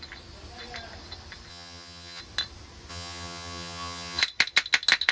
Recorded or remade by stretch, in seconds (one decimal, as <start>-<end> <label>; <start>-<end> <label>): 0.0-1.5 recorded; 1.5-2.2 remade; 2.2-2.9 recorded; 2.9-4.2 remade; 4.2-5.1 recorded